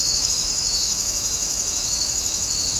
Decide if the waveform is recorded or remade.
remade